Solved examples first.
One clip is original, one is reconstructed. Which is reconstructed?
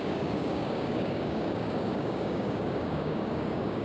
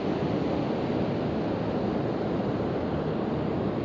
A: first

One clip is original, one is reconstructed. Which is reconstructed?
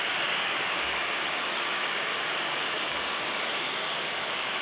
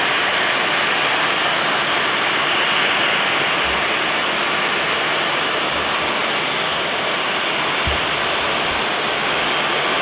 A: first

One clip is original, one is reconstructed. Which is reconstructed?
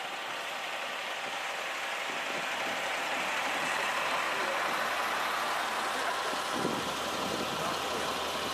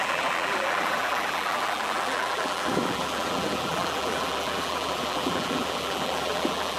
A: second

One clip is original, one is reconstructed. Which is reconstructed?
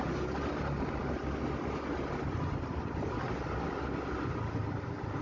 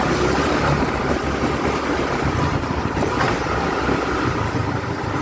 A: second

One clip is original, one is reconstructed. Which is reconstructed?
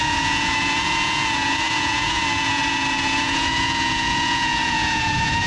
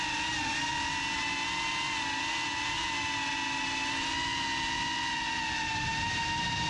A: first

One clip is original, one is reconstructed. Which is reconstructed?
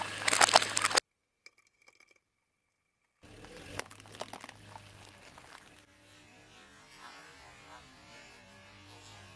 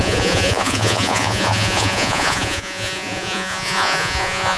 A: second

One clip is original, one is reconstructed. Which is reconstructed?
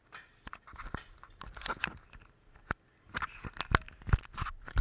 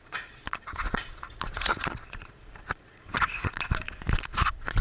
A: second